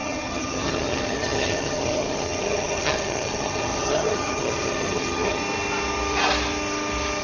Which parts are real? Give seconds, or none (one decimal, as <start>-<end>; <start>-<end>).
5.4-7.2